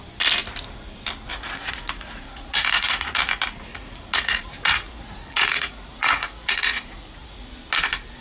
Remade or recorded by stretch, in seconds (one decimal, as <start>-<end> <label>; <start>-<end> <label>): 0.0-1.3 recorded; 1.3-3.2 remade; 3.2-3.7 recorded; 3.7-7.5 remade; 7.5-8.2 recorded